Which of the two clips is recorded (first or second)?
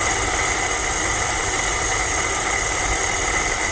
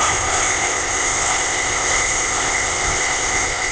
first